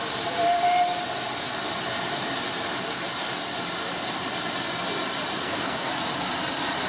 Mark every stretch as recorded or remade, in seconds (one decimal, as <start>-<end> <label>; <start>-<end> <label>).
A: 0.0-5.4 recorded; 5.4-5.9 remade; 5.9-6.9 recorded